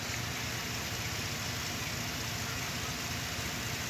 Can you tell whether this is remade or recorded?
recorded